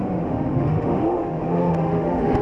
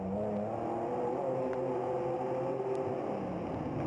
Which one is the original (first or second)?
second